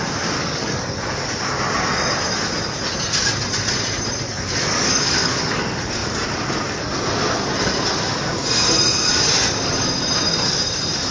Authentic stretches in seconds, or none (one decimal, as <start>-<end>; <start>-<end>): 0.0-0.4; 1.0-4.3; 5.6-11.1

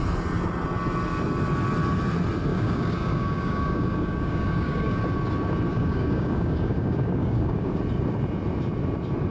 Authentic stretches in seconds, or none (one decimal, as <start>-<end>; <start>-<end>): 0.0-2.5; 5.0-5.7; 7.8-9.3

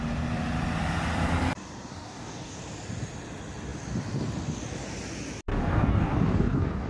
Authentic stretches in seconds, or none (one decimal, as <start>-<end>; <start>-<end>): 0.0-1.9; 2.6-5.5

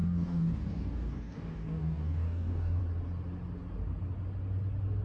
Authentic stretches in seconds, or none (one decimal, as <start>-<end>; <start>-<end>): 2.8-5.0

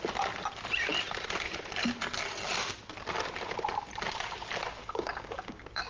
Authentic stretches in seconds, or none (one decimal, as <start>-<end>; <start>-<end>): 0.0-4.8

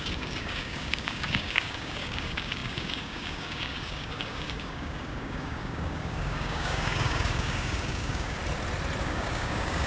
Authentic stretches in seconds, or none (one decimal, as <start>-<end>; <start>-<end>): 8.4-9.0